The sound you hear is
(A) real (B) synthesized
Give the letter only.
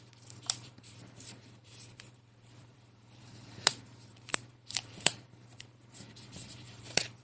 B